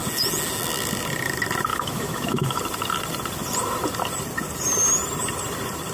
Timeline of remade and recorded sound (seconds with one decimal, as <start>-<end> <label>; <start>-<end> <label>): 0.0-1.7 recorded; 1.7-2.6 remade; 2.6-5.9 recorded